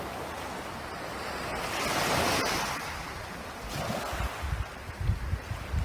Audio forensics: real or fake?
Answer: real